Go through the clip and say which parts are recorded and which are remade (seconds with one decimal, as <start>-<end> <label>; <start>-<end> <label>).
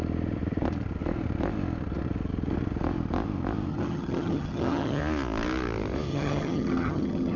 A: 0.0-3.7 recorded; 3.7-5.0 remade; 5.0-6.1 recorded; 6.1-7.4 remade